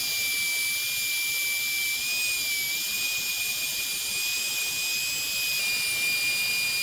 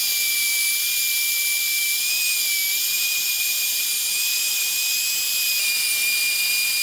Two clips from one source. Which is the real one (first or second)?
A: first